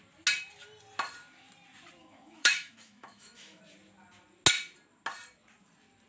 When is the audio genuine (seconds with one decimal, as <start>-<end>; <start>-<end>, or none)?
0.0-2.0; 3.6-6.1